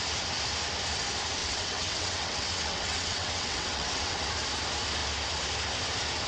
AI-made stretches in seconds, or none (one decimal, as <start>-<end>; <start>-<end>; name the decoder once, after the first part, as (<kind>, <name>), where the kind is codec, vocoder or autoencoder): 1.4-4.3 (vocoder, WaveNeXt)